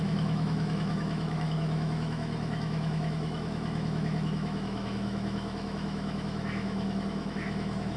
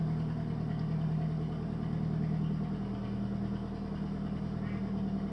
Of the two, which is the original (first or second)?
second